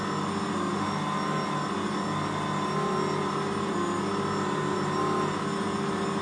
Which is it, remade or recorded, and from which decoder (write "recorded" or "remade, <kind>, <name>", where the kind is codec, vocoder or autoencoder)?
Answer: recorded